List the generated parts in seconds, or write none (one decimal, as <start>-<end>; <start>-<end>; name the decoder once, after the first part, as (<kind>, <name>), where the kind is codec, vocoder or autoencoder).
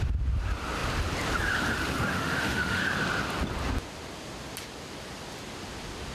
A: 2.1-2.8 (autoencoder, DAC-VAE)